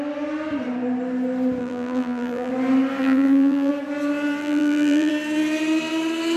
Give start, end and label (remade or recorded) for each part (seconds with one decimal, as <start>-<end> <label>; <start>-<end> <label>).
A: 0.0-1.6 recorded; 1.6-2.5 remade; 2.5-3.0 recorded; 3.0-3.7 remade; 3.7-4.4 recorded; 4.4-5.1 remade; 5.1-6.4 recorded